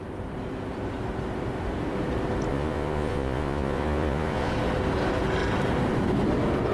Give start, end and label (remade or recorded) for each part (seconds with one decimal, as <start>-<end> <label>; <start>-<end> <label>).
0.0-2.5 recorded; 2.5-4.5 remade; 4.5-6.7 recorded